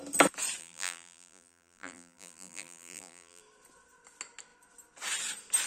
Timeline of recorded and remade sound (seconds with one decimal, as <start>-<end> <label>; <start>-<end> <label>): 0.0-0.6 recorded; 0.6-3.4 remade; 3.4-5.7 recorded